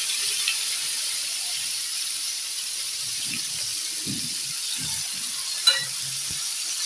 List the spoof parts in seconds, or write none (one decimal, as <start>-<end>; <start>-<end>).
0.0-3.7; 5.6-6.9